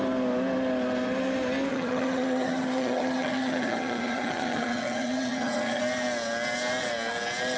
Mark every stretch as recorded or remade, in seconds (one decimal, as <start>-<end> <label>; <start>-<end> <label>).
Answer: 0.0-1.7 recorded; 1.7-5.8 remade; 5.8-7.6 recorded